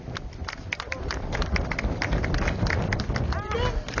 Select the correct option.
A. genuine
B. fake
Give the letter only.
A